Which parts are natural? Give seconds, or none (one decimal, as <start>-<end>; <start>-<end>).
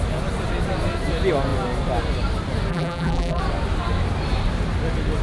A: 0.0-2.7; 3.4-5.2